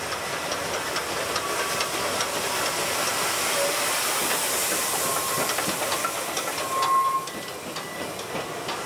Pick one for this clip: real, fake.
real